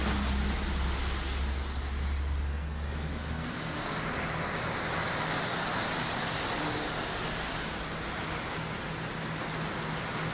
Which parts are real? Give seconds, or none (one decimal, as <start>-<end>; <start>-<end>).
0.0-2.5; 3.9-10.3